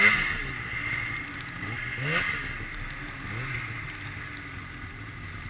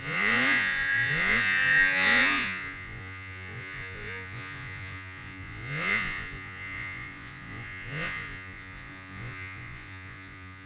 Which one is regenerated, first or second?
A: second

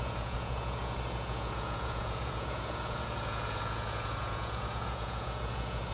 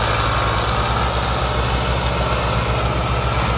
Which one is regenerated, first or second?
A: first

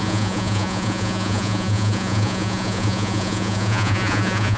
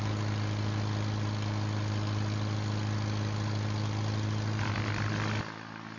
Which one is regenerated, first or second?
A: first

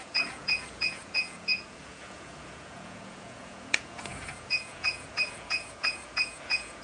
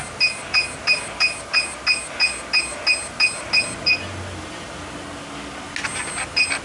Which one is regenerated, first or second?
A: first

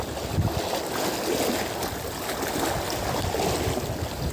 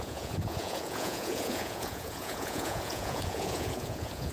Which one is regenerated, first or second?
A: second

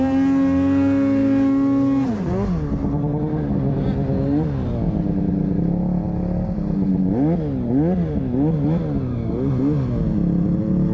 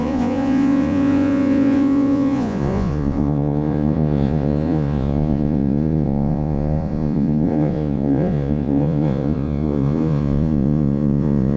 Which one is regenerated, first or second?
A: second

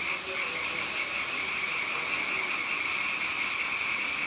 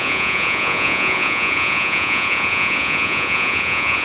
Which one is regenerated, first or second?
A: second